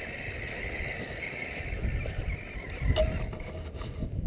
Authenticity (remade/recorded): recorded